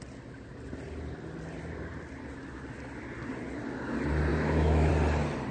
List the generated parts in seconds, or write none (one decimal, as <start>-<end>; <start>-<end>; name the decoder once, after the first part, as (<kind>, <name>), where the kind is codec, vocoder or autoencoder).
4.3-4.9 (autoencoder, DAC-VAE)